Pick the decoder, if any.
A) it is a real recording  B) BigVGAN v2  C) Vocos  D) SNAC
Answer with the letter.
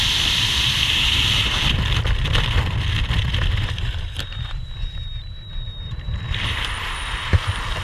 B